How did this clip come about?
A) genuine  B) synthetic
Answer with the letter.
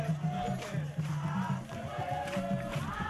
A